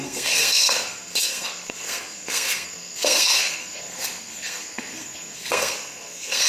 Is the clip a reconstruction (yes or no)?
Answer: yes